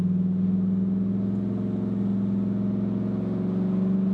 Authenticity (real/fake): real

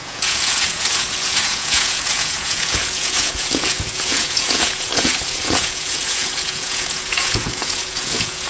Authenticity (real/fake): fake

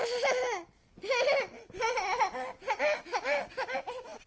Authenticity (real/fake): real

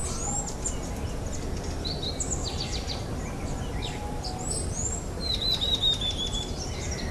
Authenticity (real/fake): real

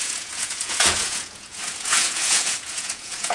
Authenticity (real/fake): fake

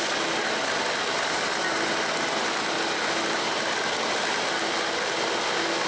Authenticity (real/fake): real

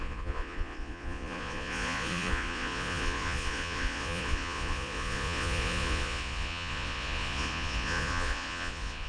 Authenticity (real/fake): fake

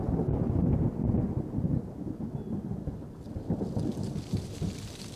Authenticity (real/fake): real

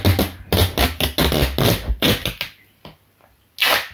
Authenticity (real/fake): real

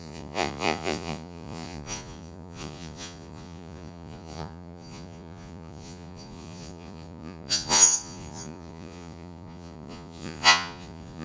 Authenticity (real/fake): fake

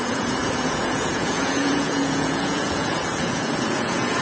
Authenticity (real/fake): fake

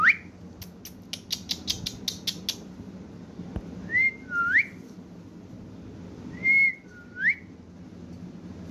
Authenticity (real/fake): real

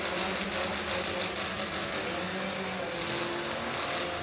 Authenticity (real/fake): real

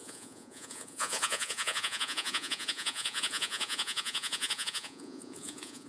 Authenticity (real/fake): fake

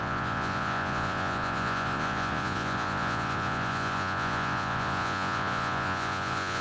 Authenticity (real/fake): fake